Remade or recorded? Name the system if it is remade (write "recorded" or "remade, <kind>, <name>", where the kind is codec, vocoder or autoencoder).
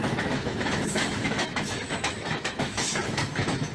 remade, autoencoder, DAC-VAE